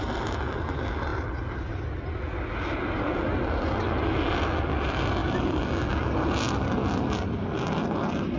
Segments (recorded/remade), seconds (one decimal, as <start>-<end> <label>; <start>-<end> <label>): 0.0-8.4 recorded